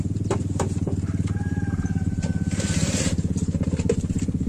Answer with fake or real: fake